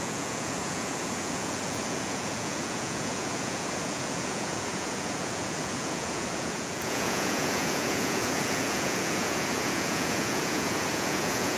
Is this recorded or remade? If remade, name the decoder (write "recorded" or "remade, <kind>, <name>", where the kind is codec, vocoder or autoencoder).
remade, vocoder, Vocos